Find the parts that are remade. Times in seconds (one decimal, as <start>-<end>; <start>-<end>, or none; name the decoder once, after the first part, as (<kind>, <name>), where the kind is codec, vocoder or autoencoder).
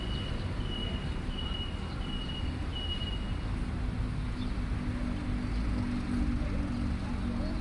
none